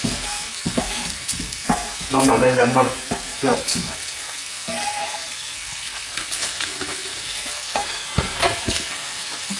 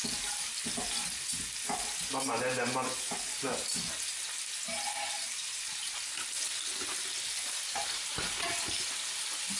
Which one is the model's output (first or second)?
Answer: first